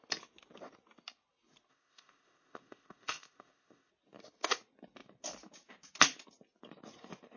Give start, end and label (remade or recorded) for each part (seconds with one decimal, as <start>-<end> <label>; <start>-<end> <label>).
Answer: 0.0-1.7 recorded; 1.7-3.9 remade; 3.9-7.4 recorded